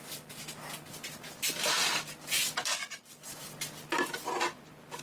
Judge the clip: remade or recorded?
recorded